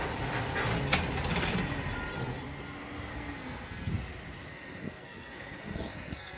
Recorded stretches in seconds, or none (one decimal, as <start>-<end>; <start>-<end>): 0.0-3.1; 3.9-4.5